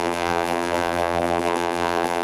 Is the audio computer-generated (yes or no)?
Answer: yes